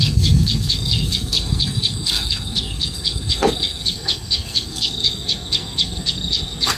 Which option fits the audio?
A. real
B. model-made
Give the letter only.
B